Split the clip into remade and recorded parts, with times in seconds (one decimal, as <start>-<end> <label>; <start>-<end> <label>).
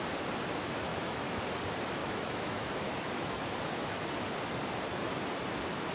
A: 0.0-0.9 recorded; 0.9-1.4 remade; 1.4-2.0 recorded; 2.0-3.5 remade; 3.5-5.9 recorded